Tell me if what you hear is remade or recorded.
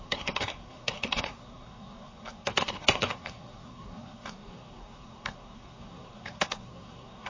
remade